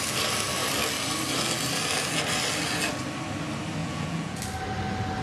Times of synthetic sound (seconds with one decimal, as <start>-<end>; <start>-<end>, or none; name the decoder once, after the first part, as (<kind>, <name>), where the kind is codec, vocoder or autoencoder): 3.8-4.4 (vocoder, Vocos)